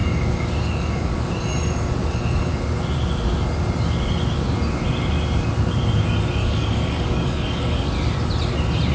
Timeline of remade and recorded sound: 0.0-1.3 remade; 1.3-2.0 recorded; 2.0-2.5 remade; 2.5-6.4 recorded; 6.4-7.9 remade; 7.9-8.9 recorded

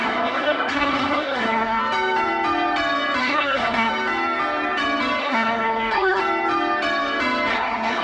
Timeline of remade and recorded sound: 0.0-1.8 remade; 1.8-3.2 recorded; 3.2-3.9 remade; 3.9-5.2 recorded; 5.2-6.2 remade; 6.2-7.5 recorded; 7.5-8.0 remade